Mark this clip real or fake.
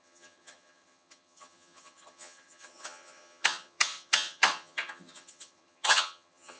fake